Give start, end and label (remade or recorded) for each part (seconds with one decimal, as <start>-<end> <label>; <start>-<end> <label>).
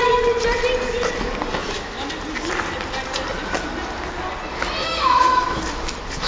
0.0-1.6 recorded; 1.6-2.1 remade; 2.1-4.8 recorded; 4.8-5.6 remade; 5.6-6.3 recorded